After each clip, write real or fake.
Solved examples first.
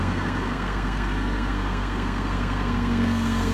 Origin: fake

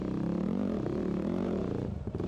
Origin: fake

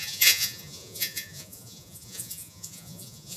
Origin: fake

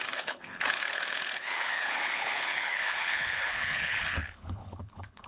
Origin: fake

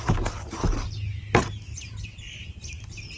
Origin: real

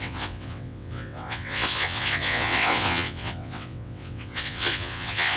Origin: fake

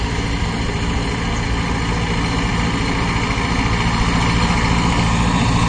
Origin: real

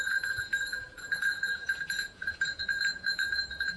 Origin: fake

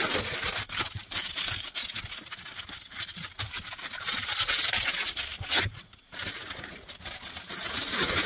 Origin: real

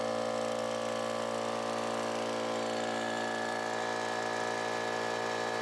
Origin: real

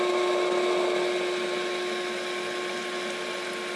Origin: real